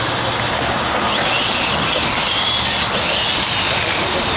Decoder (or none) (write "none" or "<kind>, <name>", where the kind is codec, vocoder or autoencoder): none